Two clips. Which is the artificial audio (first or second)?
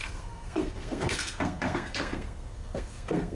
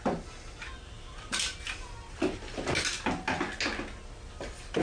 first